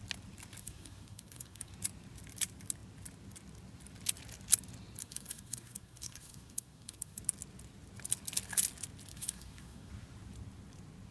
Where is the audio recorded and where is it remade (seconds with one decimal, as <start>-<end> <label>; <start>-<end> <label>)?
0.0-0.6 recorded; 0.6-1.7 remade; 1.7-5.0 recorded; 5.0-7.2 remade; 7.2-9.1 recorded; 9.1-9.9 remade; 9.9-11.1 recorded